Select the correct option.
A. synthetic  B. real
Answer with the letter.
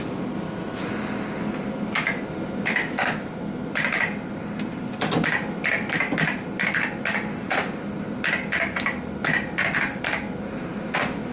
B